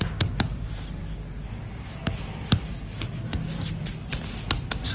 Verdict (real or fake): real